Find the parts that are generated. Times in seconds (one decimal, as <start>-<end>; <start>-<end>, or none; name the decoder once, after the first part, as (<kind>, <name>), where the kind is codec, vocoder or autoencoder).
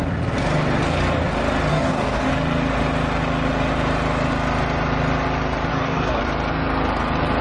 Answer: 1.7-2.3 (codec, DAC); 5.7-6.2